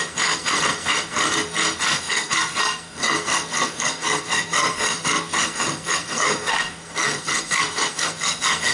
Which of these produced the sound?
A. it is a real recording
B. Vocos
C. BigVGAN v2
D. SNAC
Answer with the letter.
D